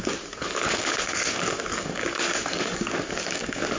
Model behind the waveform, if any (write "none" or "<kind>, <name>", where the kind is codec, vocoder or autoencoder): codec, DAC